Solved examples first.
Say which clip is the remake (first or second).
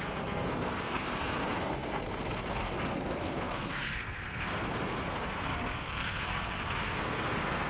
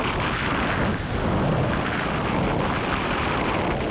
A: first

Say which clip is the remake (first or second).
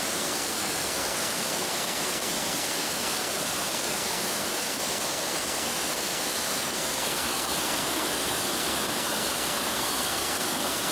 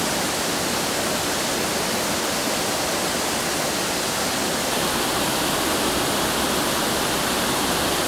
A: first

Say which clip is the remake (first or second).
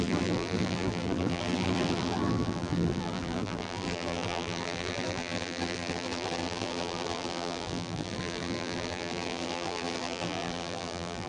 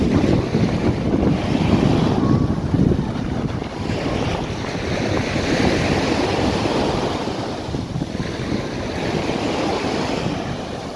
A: first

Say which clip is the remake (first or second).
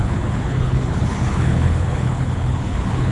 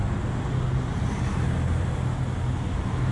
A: first